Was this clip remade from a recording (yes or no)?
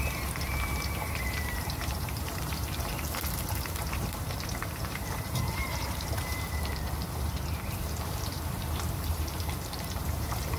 yes